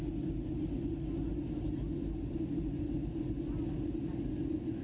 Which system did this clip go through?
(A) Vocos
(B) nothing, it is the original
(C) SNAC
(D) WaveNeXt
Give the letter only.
B